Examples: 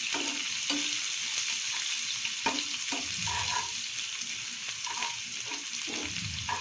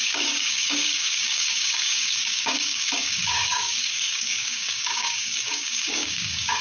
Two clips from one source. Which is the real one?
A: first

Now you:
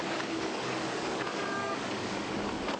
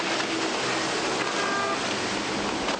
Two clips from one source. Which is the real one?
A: second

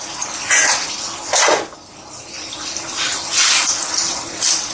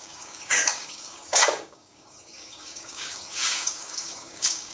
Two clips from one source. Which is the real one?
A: first